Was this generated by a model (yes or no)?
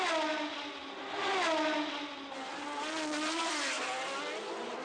no